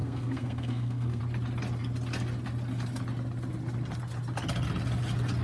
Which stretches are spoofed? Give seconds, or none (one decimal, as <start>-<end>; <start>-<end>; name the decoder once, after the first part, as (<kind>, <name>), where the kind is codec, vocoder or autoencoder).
0.0-1.2 (codec, SNAC)